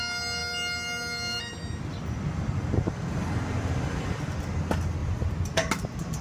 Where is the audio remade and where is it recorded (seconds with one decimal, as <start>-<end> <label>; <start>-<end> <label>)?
0.0-5.0 recorded; 5.0-5.7 remade; 5.7-6.2 recorded